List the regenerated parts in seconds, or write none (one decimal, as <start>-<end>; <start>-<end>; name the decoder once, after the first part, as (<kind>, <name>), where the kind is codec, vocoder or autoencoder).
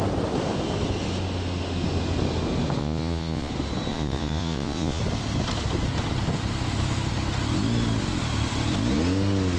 2.8-3.5 (vocoder, Vocos); 3.9-5.0